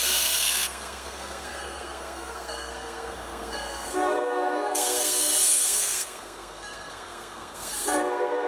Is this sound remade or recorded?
remade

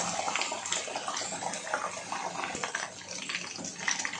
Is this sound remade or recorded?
recorded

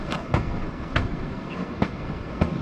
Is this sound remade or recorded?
remade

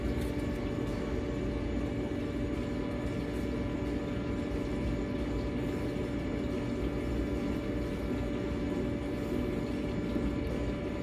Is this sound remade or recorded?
recorded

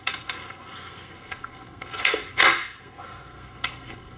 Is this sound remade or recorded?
remade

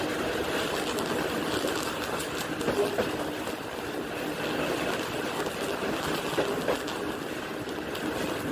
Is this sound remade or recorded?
recorded